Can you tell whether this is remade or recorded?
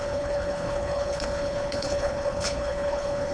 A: remade